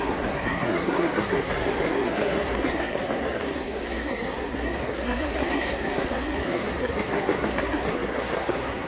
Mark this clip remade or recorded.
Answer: remade